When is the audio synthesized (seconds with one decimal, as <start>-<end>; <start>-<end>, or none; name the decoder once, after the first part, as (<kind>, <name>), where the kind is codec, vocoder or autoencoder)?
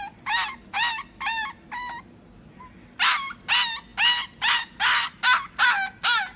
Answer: none